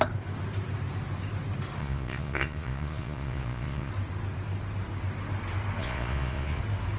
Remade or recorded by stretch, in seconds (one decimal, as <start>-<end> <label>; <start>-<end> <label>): 0.0-1.8 recorded; 1.8-3.9 remade; 3.9-5.8 recorded; 5.8-6.6 remade; 6.6-7.0 recorded